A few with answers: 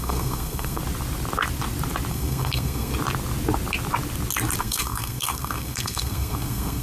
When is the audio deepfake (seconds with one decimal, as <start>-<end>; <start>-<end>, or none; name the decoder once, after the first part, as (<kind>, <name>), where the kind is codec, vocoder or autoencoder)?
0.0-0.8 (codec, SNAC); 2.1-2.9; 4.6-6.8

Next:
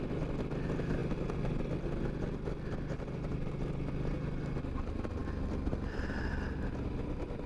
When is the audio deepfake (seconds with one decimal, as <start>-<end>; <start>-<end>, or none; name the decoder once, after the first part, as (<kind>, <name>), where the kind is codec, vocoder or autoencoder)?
none

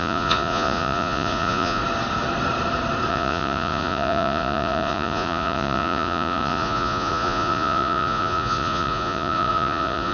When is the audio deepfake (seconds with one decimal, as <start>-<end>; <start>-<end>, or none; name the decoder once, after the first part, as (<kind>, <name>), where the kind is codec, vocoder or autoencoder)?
0.0-1.8 (vocoder, Vocos); 3.1-10.1

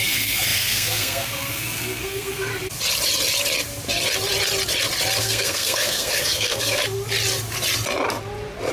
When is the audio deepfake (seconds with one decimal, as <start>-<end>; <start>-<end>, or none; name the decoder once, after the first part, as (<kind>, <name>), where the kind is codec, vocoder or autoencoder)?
0.0-2.5 (codec, SNAC); 5.2-6.8

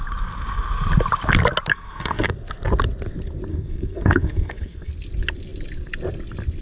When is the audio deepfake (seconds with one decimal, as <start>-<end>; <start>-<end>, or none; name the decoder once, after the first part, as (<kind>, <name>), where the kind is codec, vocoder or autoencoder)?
1.7-2.3 (codec, SNAC); 3.5-4.9

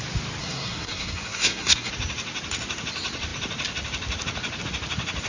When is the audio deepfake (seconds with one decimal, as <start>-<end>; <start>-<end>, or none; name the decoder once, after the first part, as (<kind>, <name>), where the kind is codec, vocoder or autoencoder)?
0.4-1.9 (codec, SNAC)